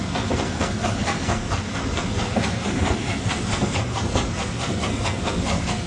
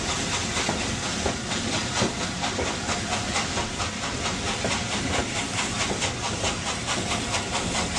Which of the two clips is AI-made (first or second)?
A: first